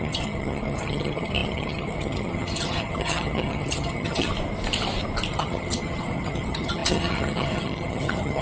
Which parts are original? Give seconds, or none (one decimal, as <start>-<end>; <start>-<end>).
4.3-5.3